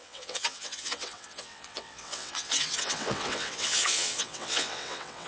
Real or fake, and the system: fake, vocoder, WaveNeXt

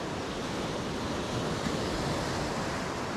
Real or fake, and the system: real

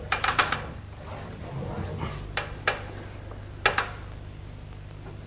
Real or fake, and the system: real